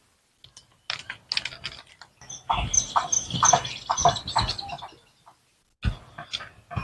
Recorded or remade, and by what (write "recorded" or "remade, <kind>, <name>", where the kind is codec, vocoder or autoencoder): recorded